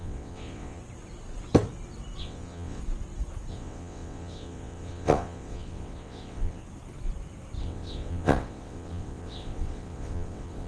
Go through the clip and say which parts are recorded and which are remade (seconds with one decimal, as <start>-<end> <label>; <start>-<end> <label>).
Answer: 0.0-0.8 remade; 0.8-2.2 recorded; 2.2-2.8 remade; 2.8-3.5 recorded; 3.5-6.6 remade; 6.6-7.6 recorded; 7.6-10.7 remade